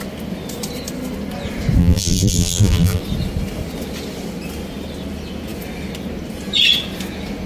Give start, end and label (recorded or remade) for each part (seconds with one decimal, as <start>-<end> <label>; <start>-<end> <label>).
0.0-1.8 recorded; 1.8-3.0 remade; 3.0-7.5 recorded